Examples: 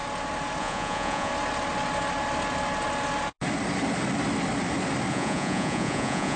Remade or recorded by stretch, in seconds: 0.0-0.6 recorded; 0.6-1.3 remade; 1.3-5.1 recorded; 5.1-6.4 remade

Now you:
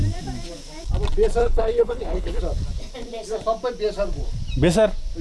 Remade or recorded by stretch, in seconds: 0.0-1.4 recorded; 1.4-2.4 remade; 2.4-5.2 recorded

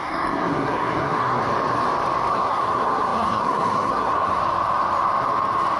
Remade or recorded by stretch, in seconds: 0.0-1.4 remade; 1.4-2.3 recorded; 2.3-4.4 remade; 4.4-5.8 recorded